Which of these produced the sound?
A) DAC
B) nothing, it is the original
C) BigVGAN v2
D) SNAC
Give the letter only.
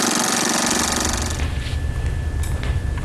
B